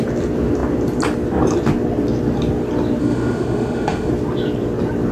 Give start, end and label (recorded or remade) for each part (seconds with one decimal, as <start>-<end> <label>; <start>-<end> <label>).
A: 0.0-3.0 recorded; 3.0-4.1 remade; 4.1-5.1 recorded